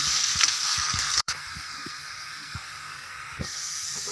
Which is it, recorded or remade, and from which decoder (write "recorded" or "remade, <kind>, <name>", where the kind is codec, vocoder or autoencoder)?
remade, codec, SNAC